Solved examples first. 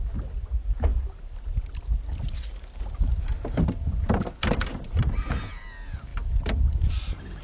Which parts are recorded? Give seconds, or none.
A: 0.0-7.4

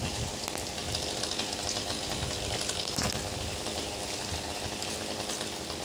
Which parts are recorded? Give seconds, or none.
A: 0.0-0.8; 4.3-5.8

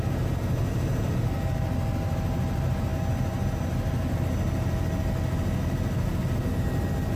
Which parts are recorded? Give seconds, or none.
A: 0.0-7.2

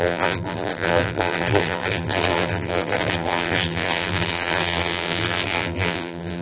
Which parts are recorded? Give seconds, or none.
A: none

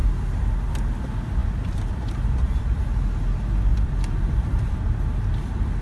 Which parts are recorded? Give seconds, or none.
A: 0.7-1.4; 3.0-3.7; 4.8-5.8

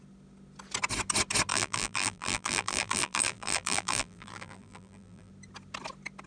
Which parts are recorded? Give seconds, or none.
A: 0.0-1.5; 5.3-6.3

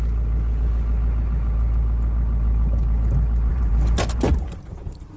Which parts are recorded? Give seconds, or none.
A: 0.0-3.5